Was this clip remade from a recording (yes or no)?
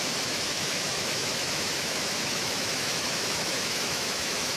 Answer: yes